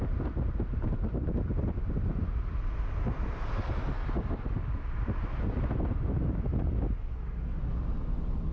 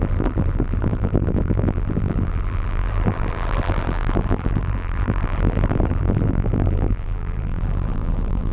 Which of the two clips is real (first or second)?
first